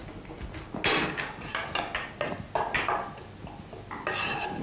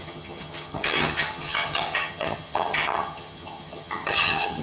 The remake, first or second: second